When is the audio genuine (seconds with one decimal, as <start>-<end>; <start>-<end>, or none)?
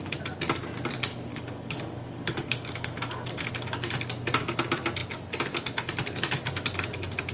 0.0-1.3; 3.5-7.3